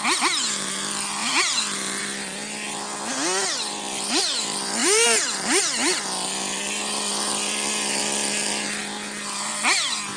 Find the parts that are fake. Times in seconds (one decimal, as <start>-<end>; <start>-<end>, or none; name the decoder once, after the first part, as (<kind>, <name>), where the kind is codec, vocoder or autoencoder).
1.2-2.0 (vocoder, BigVGAN v2); 3.7-4.2; 4.8-8.0